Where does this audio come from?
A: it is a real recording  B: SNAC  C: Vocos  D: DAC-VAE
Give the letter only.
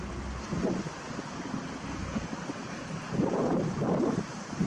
A